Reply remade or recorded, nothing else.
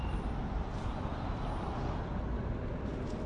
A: recorded